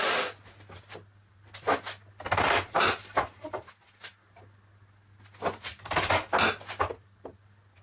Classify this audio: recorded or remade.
recorded